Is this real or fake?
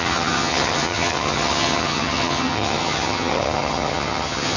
fake